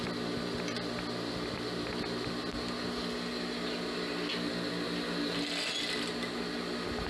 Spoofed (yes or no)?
no